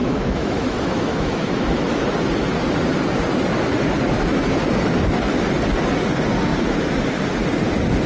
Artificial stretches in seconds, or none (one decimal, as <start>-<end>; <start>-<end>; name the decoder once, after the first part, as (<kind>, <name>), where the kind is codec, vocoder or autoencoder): 0.0-2.0 (autoencoder, DAC-VAE)